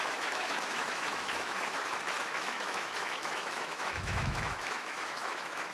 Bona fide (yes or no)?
no